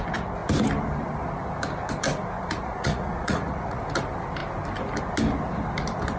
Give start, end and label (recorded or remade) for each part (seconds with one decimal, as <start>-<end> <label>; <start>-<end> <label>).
0.0-2.4 recorded; 2.4-3.8 remade; 3.8-6.2 recorded